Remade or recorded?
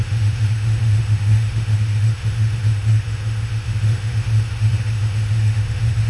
remade